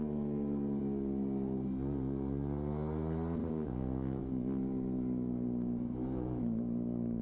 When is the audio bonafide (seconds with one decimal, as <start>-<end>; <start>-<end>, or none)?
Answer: 0.0-3.4; 4.2-7.2

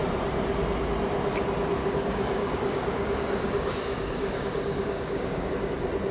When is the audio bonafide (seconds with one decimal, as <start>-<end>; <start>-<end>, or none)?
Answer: 0.0-1.8; 5.5-6.1

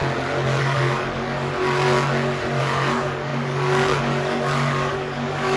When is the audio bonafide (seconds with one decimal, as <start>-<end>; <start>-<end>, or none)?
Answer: 0.0-0.6; 1.5-2.6

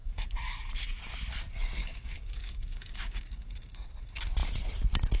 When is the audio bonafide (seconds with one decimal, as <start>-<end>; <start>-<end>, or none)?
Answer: 0.6-1.8; 3.9-5.2

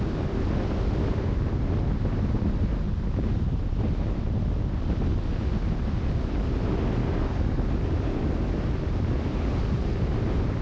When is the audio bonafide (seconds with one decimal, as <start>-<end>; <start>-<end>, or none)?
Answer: 0.0-7.0; 7.6-10.6

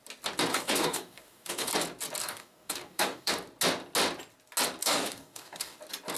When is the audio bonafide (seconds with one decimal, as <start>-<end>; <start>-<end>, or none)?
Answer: 0.0-0.5; 1.7-2.2; 3.3-4.8; 5.8-6.2

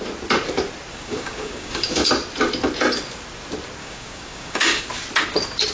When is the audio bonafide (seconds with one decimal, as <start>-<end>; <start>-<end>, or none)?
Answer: 0.0-0.9; 2.1-3.8; 4.9-5.7

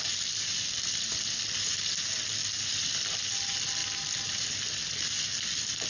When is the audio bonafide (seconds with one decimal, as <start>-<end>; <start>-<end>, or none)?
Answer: 0.0-5.9